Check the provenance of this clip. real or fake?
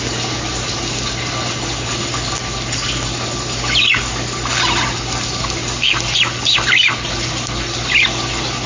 real